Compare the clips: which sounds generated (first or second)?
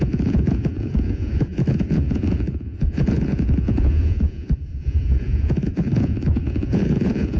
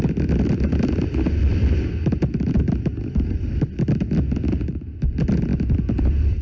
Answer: first